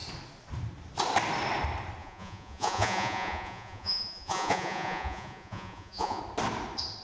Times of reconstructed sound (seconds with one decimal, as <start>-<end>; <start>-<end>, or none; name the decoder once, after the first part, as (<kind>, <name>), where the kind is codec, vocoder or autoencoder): 2.0-6.2 (vocoder, Vocos)